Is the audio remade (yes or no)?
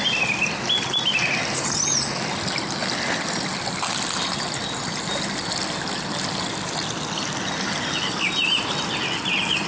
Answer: no